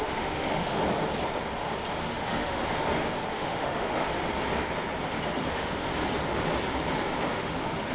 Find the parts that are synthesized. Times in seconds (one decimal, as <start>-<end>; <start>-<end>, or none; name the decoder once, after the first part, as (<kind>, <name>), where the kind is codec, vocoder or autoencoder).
0.0-0.8 (autoencoder, DAC-VAE); 2.0-2.6; 3.3-4.0; 5.5-5.9; 7.3-7.9